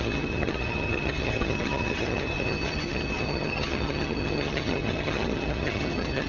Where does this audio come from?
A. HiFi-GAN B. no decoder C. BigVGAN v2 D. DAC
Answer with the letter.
A